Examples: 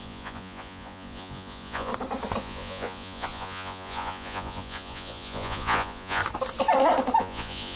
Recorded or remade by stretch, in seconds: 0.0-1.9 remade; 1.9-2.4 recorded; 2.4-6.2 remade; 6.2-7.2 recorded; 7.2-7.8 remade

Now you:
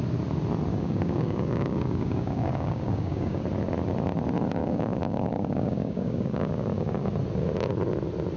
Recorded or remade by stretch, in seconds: 0.0-0.7 recorded; 0.7-3.4 remade; 3.4-4.6 recorded; 4.6-7.1 remade; 7.1-8.4 recorded

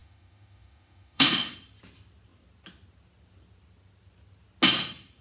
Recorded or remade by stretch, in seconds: 0.0-1.5 remade; 1.5-5.2 recorded

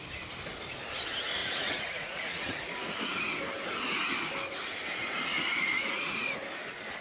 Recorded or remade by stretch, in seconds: 0.0-1.4 recorded; 1.4-3.2 remade; 3.2-5.3 recorded; 5.3-6.3 remade; 6.3-7.0 recorded